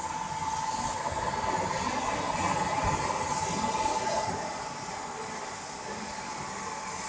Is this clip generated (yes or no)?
no